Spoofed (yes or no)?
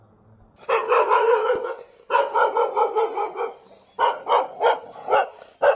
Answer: no